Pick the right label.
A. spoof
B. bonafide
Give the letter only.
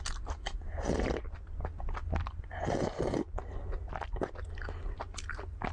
B